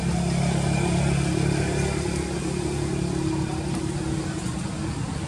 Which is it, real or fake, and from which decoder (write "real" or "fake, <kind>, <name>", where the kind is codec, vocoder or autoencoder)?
real